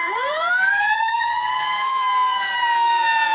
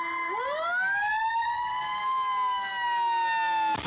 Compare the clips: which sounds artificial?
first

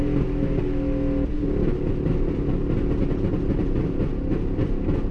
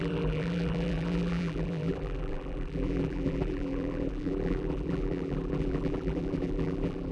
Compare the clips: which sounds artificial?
second